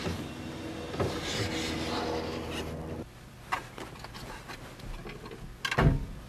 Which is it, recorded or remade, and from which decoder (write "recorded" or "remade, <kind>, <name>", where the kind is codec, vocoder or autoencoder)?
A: recorded